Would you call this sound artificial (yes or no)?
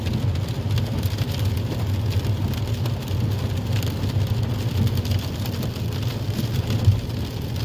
no